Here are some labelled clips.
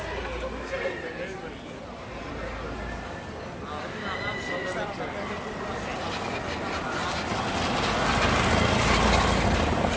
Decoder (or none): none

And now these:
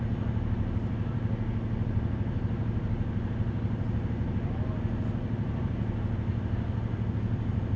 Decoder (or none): none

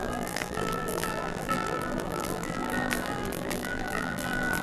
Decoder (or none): vocoder, BigVGAN v2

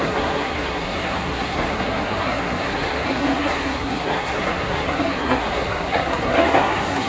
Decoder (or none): codec, SNAC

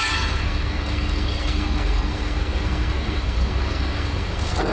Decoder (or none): codec, SNAC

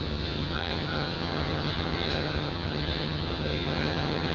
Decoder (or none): vocoder, HiFi-GAN